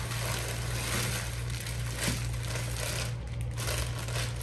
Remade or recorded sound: recorded